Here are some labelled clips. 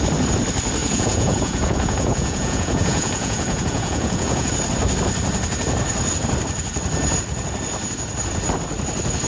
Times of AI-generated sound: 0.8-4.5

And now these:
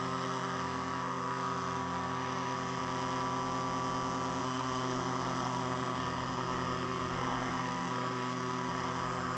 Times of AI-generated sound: 0.0-2.8; 4.4-9.4

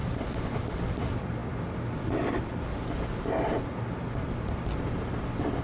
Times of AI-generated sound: none